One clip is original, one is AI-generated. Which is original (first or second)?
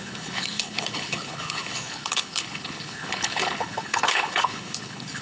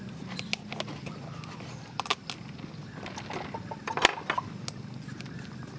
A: second